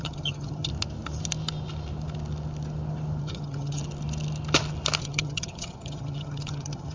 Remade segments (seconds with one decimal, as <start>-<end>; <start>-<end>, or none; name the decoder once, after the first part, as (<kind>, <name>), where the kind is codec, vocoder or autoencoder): 0.0-0.7 (vocoder, HiFi-GAN); 3.2-3.8; 5.0-6.9